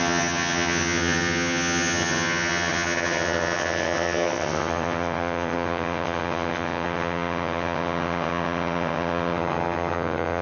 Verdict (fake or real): fake